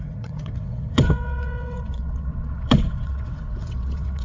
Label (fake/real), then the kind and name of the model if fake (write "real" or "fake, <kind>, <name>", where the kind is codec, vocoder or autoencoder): fake, vocoder, WaveNeXt